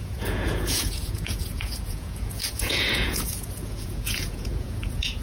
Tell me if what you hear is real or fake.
fake